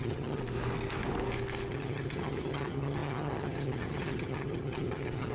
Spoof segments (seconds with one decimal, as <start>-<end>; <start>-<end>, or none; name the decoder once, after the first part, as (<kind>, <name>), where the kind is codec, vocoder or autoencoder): 0.0-0.4 (vocoder, HiFi-GAN); 1.7-5.3